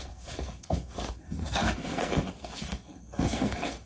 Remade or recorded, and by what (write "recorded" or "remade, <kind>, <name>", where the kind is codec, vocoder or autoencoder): remade, codec, SNAC